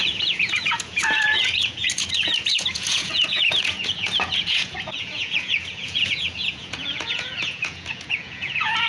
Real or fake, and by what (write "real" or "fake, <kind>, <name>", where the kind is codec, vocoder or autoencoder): fake, vocoder, Vocos